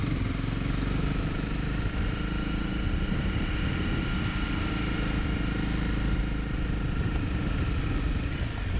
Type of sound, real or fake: real